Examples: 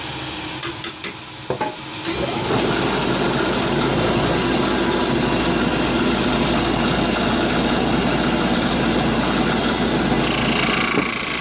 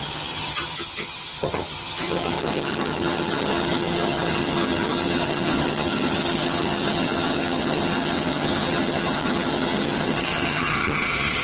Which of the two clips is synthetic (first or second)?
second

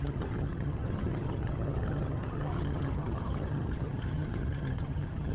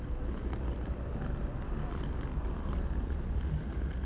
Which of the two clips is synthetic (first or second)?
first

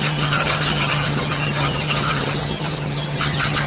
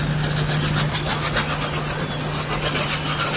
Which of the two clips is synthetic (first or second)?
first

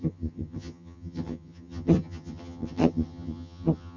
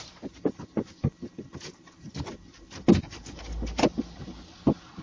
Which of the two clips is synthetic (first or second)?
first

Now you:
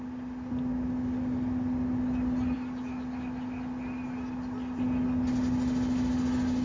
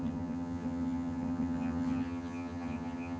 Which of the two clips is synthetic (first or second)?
second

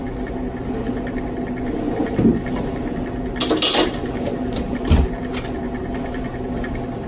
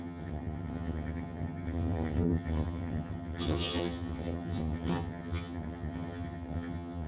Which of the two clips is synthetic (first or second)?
second